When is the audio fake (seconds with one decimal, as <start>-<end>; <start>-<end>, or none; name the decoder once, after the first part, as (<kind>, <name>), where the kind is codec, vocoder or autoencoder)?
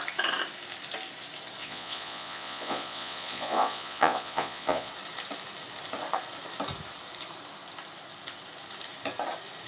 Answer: 1.6-4.9 (vocoder, Vocos)